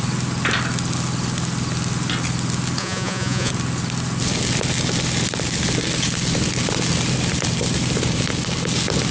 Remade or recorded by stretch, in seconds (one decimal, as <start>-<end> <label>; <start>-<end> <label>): 0.0-2.8 recorded; 2.8-3.5 remade; 3.5-9.1 recorded